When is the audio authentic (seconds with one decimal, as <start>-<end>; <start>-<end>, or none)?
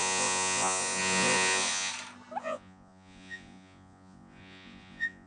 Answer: 1.9-2.4